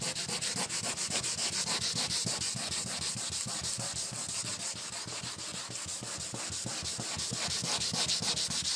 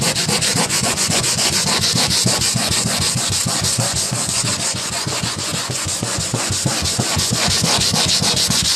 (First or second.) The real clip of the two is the first